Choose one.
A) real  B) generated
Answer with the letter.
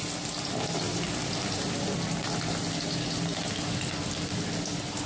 A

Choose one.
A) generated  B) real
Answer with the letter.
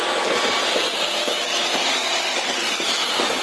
B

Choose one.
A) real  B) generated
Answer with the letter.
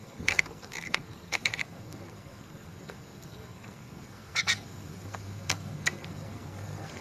B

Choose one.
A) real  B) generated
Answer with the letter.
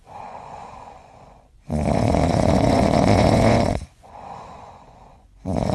B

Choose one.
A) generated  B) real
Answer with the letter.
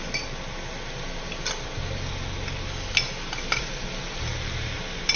B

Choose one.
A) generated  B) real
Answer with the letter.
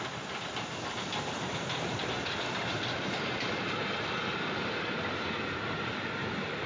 B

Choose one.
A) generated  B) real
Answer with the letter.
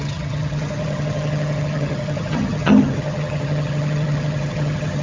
A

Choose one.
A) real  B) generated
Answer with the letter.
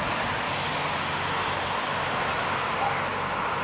A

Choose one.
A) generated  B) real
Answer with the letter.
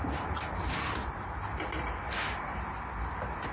B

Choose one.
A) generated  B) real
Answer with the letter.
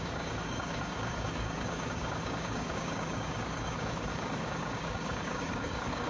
A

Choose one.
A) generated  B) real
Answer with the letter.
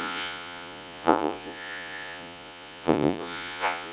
A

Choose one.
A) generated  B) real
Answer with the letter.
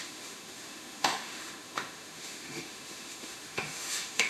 A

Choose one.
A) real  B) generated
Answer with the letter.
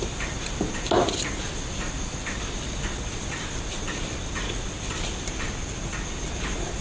A